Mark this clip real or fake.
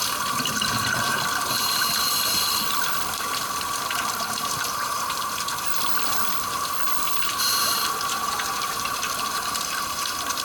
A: fake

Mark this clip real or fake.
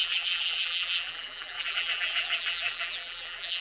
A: fake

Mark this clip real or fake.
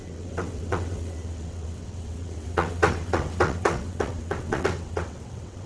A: fake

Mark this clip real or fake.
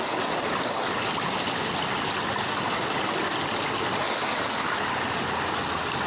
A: real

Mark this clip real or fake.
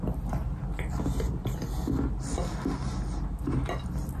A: real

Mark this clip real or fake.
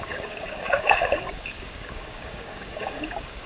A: fake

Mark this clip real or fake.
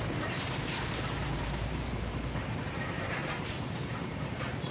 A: fake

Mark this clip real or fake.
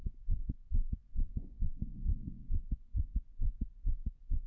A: fake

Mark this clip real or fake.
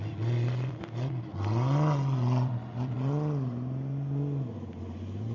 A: real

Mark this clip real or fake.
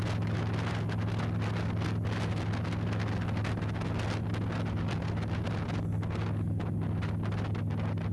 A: real